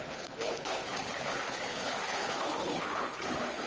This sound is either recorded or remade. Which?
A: remade